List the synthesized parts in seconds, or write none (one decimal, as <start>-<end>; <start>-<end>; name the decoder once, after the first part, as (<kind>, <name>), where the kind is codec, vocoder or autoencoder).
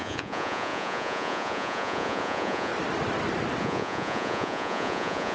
0.0-2.7 (vocoder, Vocos); 3.6-5.3